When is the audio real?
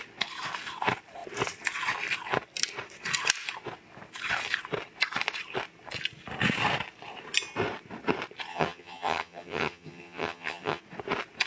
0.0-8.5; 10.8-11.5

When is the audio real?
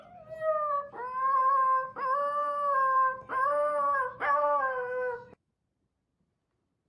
0.0-1.4; 5.5-6.9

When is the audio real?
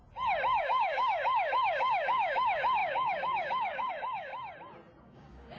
0.0-0.6; 4.3-5.0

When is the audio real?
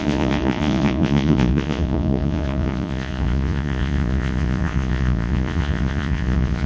none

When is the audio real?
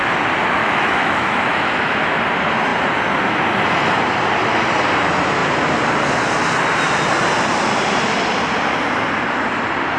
0.0-0.6; 2.1-10.0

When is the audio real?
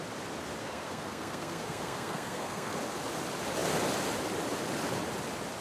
0.0-0.6; 2.8-5.6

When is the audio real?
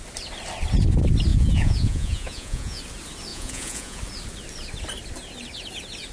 0.0-1.3; 2.8-3.3; 4.0-6.1